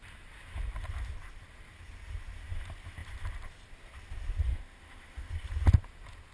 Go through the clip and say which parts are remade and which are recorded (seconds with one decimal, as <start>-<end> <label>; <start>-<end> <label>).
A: 0.0-4.5 recorded; 4.5-5.3 remade; 5.3-6.3 recorded